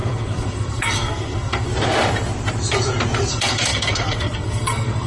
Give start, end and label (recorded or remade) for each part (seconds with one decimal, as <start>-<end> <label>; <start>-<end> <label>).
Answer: 0.0-1.7 remade; 1.7-3.3 recorded; 3.3-5.1 remade